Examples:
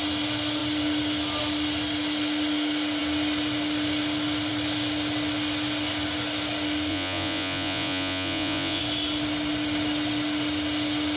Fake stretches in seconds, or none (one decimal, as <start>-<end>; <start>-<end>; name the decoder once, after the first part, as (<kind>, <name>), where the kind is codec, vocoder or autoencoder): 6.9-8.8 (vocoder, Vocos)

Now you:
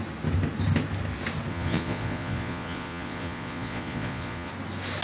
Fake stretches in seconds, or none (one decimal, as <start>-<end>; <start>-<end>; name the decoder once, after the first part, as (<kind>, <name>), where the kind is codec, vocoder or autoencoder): 1.5-4.5 (vocoder, Vocos)

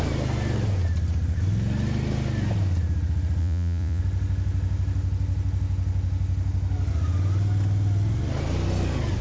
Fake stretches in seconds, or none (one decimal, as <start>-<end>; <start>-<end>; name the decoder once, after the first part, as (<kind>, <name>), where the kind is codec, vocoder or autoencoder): 3.4-4.0 (vocoder, Vocos)

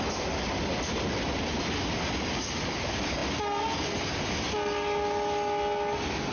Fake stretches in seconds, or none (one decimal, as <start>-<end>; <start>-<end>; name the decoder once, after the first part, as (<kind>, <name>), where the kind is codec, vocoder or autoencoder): none

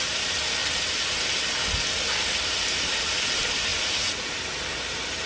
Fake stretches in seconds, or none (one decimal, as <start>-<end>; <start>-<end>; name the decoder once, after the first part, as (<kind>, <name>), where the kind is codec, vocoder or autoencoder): 3.7-4.3 (vocoder, Vocos)

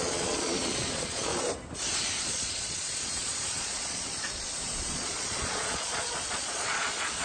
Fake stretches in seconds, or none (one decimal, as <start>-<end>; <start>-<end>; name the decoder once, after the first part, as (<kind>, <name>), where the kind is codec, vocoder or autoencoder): 0.0-1.3 (vocoder, Vocos); 2.2-7.2